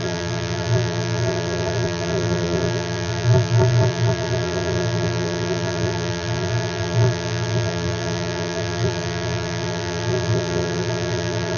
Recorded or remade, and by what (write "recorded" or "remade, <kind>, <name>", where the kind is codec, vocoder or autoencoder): remade, vocoder, BigVGAN v2